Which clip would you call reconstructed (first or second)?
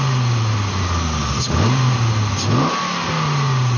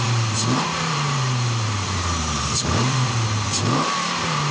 second